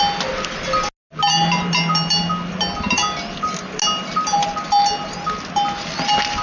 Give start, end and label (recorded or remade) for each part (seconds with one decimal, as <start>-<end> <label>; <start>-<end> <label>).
0.0-6.4 recorded